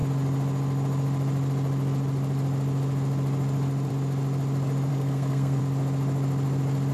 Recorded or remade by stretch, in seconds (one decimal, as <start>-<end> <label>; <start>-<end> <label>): 0.0-4.9 recorded; 4.9-5.6 remade; 5.6-6.9 recorded